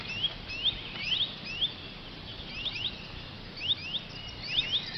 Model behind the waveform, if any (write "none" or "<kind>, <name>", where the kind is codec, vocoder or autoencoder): none